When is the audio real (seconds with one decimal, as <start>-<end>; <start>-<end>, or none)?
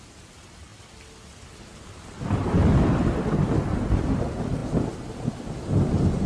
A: 0.0-6.3